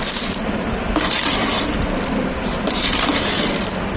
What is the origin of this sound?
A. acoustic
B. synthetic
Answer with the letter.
B